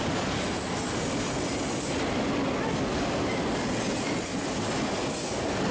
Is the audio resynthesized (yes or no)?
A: no